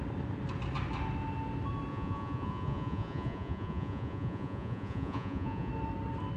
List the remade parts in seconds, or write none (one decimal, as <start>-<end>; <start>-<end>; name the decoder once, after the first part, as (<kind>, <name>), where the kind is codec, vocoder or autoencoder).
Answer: 1.9-5.7 (vocoder, Vocos)